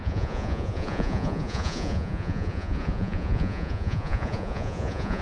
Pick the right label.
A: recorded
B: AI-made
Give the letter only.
B